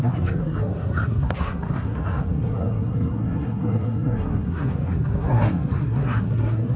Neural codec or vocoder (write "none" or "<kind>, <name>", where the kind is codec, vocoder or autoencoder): codec, SNAC